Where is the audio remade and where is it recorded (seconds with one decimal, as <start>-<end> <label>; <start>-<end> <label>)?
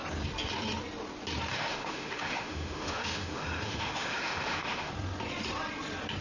0.0-1.5 recorded; 1.5-4.9 remade; 4.9-6.2 recorded